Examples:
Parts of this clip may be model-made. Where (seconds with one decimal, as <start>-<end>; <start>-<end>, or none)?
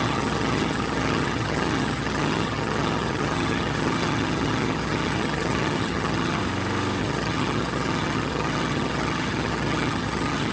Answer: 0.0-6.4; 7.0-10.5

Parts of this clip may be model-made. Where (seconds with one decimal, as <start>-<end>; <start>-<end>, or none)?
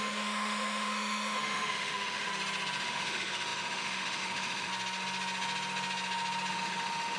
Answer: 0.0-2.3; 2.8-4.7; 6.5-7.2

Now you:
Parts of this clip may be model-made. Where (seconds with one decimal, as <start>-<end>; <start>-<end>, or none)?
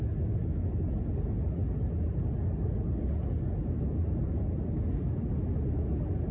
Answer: none